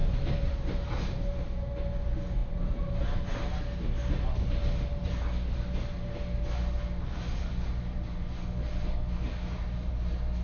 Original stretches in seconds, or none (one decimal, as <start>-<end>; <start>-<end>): 1.4-2.4; 3.6-10.4